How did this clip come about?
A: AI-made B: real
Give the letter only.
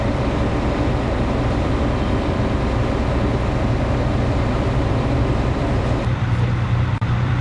A